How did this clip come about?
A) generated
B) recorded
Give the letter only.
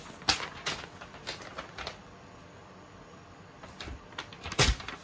B